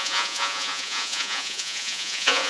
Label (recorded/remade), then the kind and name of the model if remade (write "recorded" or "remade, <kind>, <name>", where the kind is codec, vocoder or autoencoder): remade, vocoder, Vocos